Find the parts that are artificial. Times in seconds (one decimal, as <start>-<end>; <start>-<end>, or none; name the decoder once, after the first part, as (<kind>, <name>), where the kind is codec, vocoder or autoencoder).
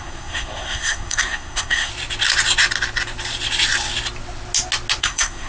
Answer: 0.0-1.9 (codec, SNAC); 5.0-5.5